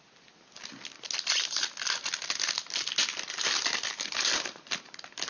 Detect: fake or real real